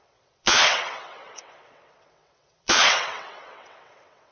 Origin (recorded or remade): remade